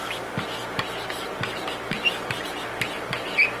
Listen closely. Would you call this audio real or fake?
fake